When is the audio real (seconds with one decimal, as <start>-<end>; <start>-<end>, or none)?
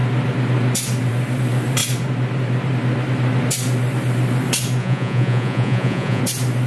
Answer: 0.0-4.8; 6.2-6.7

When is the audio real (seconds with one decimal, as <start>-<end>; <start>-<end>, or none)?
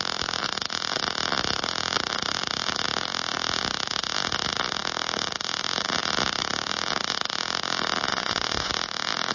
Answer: 0.0-8.1; 8.7-9.3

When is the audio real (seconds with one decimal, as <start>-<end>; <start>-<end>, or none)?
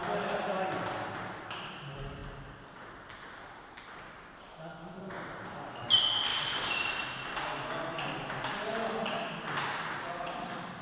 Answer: 0.0-10.8